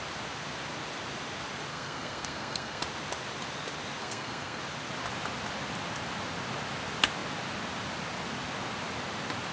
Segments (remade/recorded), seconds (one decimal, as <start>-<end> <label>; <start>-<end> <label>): 0.0-1.7 recorded; 1.7-2.8 remade; 2.8-4.0 recorded; 4.0-4.6 remade; 4.6-9.5 recorded